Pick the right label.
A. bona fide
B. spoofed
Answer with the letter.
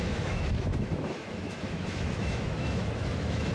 B